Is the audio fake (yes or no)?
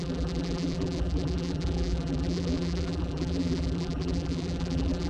yes